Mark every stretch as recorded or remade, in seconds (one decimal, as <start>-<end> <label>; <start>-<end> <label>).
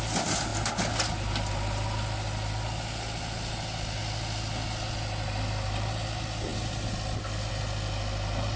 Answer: 0.0-8.6 recorded